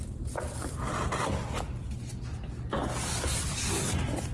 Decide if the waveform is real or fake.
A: real